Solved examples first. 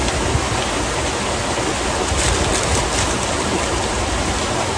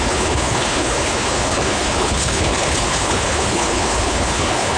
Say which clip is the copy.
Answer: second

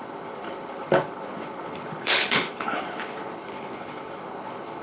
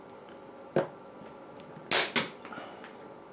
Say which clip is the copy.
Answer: first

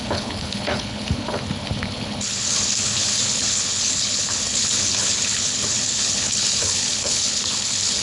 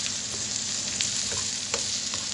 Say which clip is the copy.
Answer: first